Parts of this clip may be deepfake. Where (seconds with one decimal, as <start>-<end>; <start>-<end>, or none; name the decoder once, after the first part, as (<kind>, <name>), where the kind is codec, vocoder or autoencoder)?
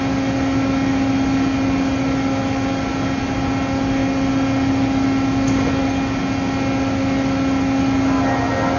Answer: none